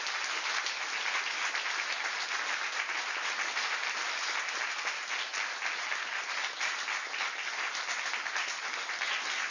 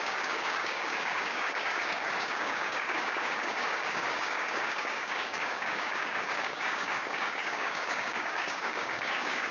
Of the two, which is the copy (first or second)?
second